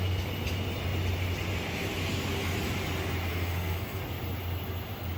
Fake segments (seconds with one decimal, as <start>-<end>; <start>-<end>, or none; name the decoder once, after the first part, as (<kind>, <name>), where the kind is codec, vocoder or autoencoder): 3.3-4.0 (codec, SNAC)